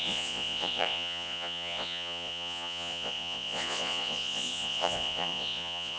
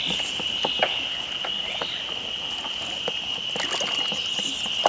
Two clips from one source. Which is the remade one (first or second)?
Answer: first